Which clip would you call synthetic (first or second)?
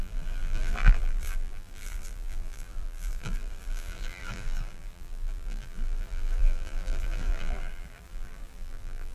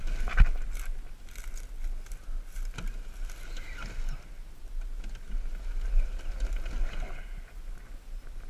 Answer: first